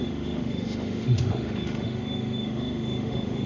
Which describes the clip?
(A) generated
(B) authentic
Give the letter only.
A